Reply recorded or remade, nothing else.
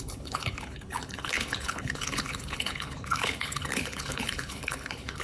remade